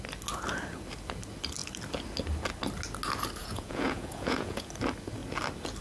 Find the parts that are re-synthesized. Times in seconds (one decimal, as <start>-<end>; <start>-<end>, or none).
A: 3.4-4.7